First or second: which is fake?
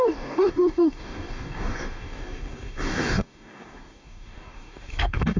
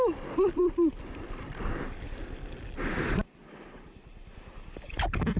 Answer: first